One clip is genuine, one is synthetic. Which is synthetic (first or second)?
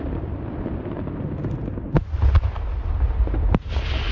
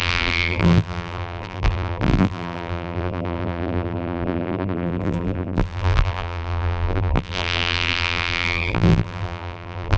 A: second